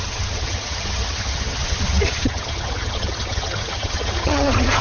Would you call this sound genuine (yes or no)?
no